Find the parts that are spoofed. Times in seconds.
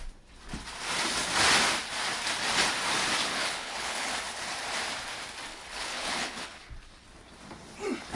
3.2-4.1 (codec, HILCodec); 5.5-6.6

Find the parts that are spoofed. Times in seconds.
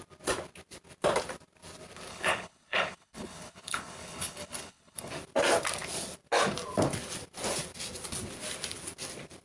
2.1-5.1 (codec, HILCodec)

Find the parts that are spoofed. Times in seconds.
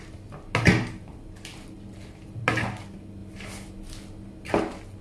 none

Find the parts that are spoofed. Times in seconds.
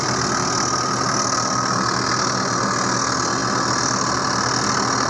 none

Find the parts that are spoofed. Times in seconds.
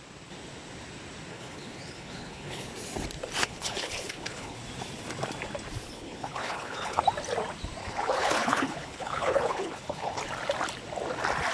1.3-2.7 (codec, HILCodec); 3.4-4.6; 5.9-7.0; 7.8-10.2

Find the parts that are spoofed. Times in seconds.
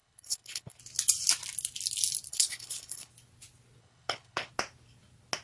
0.0-0.8 (codec, HILCodec); 2.3-3.1; 3.8-4.5